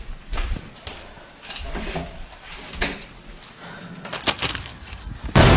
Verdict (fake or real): real